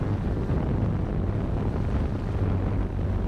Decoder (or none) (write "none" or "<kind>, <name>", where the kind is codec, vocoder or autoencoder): none